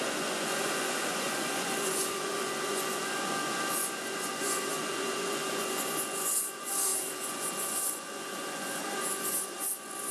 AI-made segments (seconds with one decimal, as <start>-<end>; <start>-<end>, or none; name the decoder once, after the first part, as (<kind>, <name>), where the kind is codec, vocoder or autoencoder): 0.0-10.1 (vocoder, Vocos)